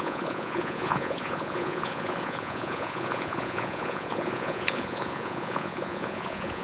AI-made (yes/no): yes